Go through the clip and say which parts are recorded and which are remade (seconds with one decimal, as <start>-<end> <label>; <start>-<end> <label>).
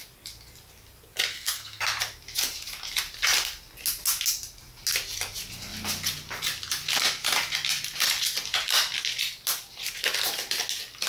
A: 0.0-1.3 recorded; 1.3-1.8 remade; 1.8-11.1 recorded